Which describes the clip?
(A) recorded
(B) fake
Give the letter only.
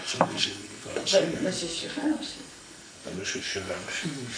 B